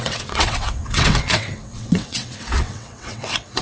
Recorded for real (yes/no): no